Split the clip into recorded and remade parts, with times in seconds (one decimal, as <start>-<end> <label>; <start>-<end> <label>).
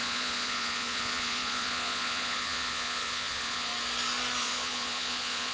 0.0-3.7 remade; 3.7-4.4 recorded; 4.4-5.5 remade